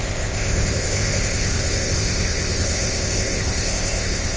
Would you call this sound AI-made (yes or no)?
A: yes